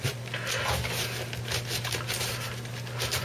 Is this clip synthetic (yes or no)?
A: no